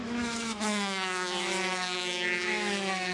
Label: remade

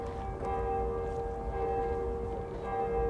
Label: recorded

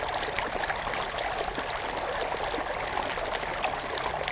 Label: recorded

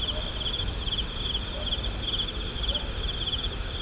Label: recorded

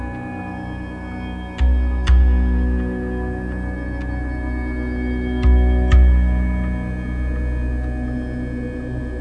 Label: recorded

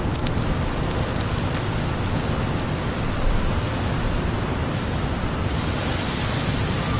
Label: recorded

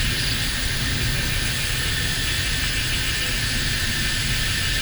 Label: recorded